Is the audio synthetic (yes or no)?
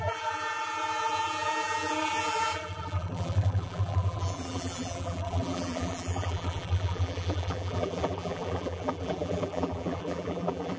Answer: yes